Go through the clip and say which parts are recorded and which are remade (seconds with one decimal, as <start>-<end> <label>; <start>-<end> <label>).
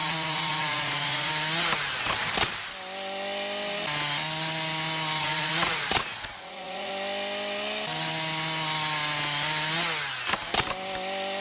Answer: 0.0-1.3 remade; 1.3-5.2 recorded; 5.2-6.9 remade; 6.9-11.4 recorded